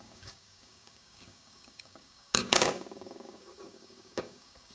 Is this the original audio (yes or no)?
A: no